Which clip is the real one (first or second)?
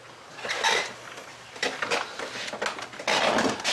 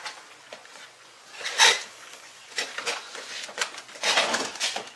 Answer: first